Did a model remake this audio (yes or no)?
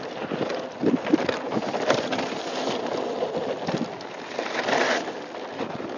no